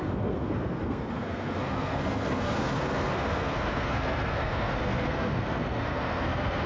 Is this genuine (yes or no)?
no